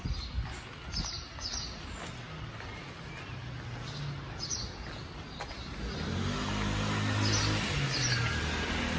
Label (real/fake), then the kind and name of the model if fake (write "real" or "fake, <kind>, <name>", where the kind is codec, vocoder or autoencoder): real